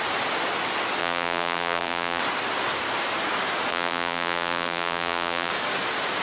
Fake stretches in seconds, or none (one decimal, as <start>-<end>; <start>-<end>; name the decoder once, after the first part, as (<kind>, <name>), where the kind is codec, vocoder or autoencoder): 1.0-2.2 (vocoder, BigVGAN v2); 3.7-5.5